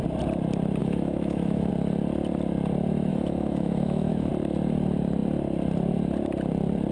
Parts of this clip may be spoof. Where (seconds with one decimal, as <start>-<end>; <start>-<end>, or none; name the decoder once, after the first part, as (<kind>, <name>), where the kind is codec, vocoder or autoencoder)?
0.8-1.7 (autoencoder, DAC-VAE); 3.1-4.3